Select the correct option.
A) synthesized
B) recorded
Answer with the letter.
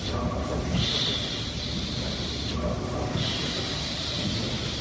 B